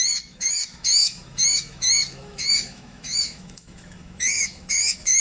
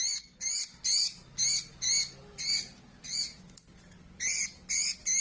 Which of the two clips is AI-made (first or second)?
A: first